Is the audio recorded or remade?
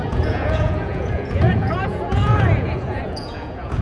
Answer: remade